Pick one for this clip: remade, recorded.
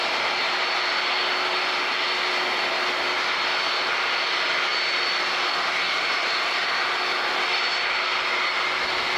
recorded